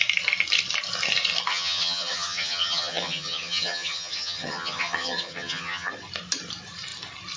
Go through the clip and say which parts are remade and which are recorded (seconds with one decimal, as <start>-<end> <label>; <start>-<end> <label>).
0.0-1.5 recorded; 1.5-5.9 remade; 5.9-7.4 recorded